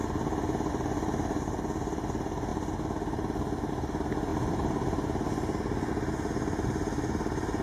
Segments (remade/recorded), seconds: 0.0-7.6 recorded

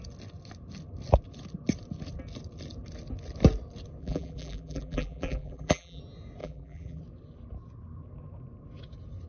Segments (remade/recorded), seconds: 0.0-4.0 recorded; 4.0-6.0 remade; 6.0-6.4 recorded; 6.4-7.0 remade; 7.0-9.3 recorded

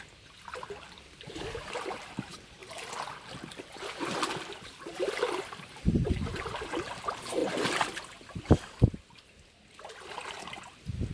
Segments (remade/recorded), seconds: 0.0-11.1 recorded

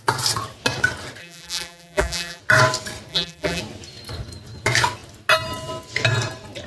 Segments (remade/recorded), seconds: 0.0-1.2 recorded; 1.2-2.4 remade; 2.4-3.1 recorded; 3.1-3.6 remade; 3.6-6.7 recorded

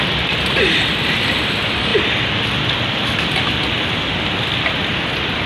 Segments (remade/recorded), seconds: 0.0-1.9 recorded; 1.9-4.1 remade; 4.1-5.5 recorded